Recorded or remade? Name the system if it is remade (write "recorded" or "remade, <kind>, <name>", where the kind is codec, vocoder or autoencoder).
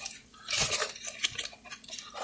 recorded